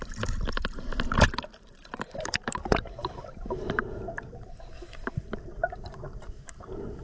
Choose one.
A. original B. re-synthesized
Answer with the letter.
B